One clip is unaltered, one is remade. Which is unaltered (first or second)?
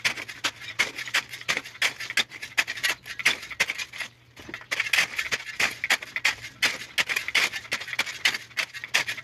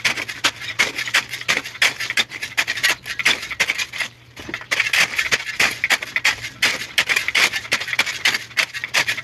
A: first